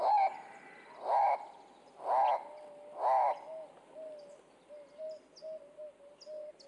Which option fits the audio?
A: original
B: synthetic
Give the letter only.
A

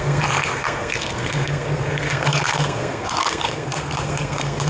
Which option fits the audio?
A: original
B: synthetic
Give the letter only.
B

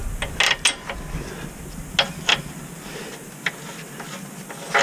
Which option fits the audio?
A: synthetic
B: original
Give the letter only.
B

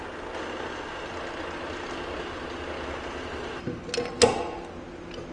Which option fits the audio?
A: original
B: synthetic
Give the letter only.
A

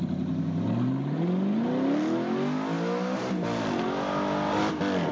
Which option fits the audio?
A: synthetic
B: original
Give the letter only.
B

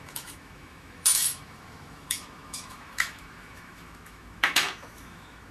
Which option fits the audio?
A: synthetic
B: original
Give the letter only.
A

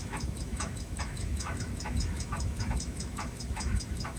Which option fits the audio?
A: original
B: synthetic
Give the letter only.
B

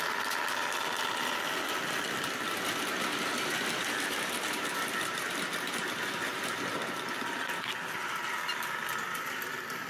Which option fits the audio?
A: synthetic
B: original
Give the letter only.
B